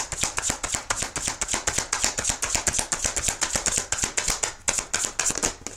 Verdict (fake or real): real